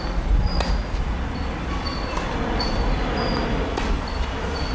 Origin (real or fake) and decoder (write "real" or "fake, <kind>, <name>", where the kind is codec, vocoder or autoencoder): real